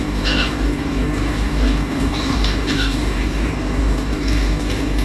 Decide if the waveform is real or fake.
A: fake